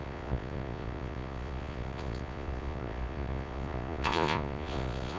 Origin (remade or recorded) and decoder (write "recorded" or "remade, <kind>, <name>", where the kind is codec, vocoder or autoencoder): remade, vocoder, Vocos